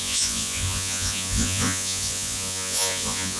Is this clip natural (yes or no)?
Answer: no